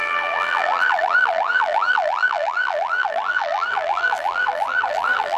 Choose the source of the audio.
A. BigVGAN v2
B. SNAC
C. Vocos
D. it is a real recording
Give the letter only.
A